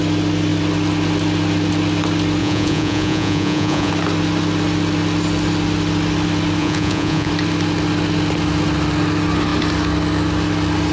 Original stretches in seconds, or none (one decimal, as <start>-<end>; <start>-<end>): 0.0-2.4; 3.9-6.6; 7.3-10.9